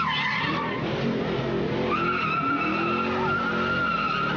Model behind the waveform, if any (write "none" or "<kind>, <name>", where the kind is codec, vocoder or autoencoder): none